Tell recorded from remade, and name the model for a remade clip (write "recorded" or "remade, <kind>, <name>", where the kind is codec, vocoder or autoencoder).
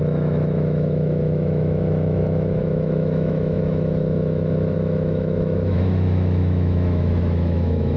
remade, autoencoder, DAC-VAE